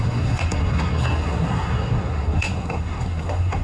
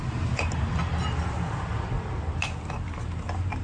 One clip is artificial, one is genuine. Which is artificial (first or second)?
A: first